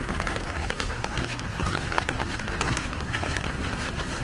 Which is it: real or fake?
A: fake